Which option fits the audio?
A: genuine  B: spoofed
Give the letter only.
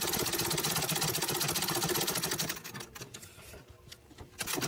A